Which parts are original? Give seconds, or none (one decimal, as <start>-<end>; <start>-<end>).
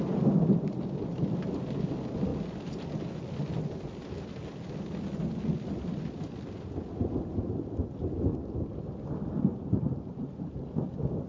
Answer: 0.0-8.3; 9.0-11.3